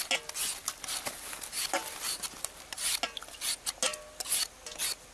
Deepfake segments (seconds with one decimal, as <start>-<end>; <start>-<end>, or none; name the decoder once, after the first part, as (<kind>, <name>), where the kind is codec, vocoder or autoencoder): none